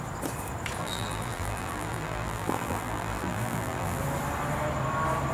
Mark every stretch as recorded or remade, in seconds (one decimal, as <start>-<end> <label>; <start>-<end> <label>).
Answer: 0.0-0.8 recorded; 0.8-4.0 remade; 4.0-5.3 recorded